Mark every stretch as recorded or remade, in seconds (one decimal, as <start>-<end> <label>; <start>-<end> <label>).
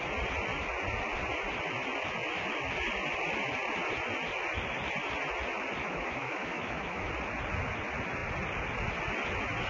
0.0-5.8 recorded; 5.8-7.1 remade; 7.1-9.7 recorded